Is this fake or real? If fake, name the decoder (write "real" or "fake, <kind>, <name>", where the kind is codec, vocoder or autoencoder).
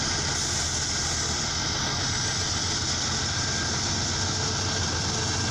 real